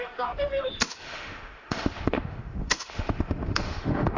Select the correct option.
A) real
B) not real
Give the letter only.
B